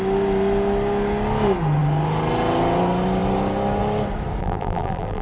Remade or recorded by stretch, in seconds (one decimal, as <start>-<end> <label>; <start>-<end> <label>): 0.0-4.4 recorded; 4.4-5.2 remade